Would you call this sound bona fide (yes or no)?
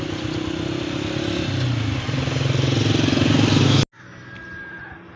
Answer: yes